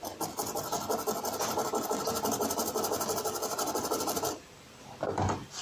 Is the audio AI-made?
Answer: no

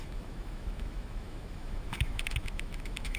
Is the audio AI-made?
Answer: yes